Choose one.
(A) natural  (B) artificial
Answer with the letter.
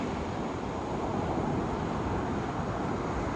A